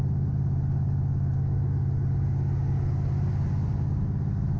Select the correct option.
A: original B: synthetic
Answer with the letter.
A